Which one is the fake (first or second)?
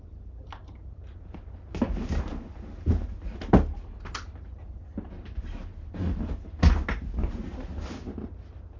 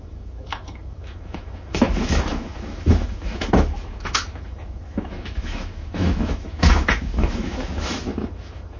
second